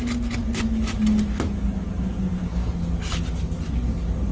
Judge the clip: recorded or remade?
recorded